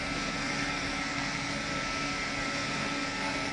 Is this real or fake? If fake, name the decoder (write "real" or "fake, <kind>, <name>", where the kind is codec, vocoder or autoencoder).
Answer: fake, codec, SNAC